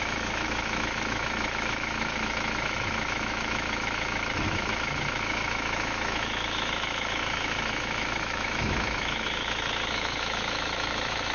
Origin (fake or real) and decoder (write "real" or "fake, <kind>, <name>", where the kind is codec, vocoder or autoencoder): fake, autoencoder, DAC-VAE